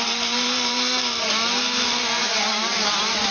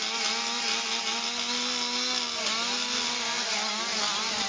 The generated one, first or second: first